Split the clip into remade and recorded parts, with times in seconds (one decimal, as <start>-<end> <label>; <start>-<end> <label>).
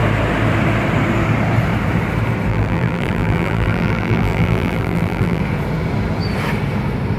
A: 0.0-2.5 recorded; 2.5-5.4 remade; 5.4-7.2 recorded